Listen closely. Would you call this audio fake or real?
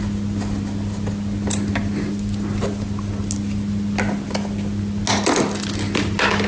real